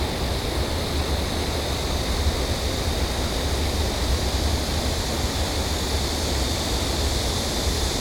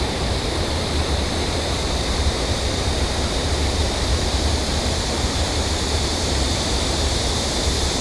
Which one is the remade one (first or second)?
second